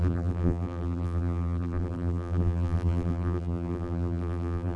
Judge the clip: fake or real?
fake